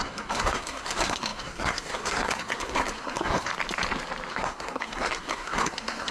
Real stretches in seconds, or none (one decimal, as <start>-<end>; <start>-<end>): 3.5-4.3